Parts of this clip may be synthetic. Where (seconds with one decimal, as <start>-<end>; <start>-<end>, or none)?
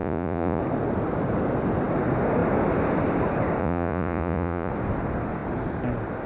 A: 0.0-0.6; 3.6-4.7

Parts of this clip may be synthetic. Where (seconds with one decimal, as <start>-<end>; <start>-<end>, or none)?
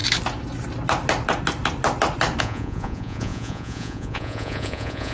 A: 2.4-5.1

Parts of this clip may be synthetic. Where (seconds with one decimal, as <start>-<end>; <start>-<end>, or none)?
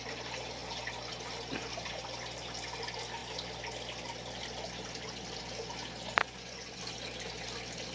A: 6.2-6.8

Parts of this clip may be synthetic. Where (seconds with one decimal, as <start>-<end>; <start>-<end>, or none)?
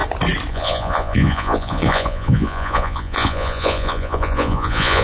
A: 0.5-5.0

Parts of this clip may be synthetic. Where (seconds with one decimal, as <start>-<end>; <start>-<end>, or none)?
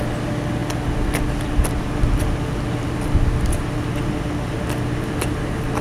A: none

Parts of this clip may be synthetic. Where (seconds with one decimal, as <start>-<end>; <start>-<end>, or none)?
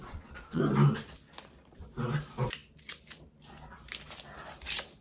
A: 0.0-0.6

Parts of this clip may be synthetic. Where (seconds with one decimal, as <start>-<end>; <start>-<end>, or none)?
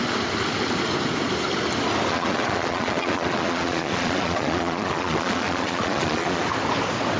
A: 2.1-6.4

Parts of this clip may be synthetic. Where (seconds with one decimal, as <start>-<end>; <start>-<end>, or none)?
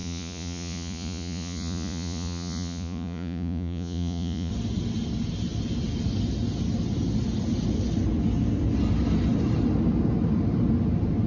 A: 0.0-4.5